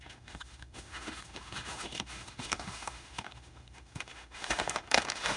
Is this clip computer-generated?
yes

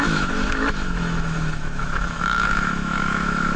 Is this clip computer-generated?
yes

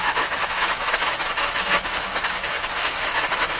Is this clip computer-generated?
yes